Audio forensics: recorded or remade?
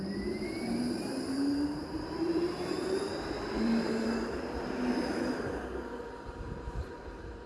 remade